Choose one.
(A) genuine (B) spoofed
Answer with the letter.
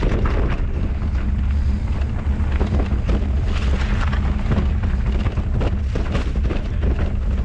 A